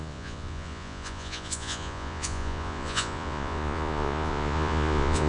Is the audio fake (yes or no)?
yes